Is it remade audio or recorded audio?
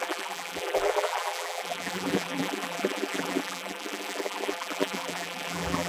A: remade